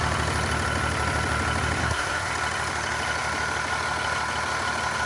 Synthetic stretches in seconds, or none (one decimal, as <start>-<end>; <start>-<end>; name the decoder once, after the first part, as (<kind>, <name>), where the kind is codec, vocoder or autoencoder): 1.8-2.3 (codec, SNAC)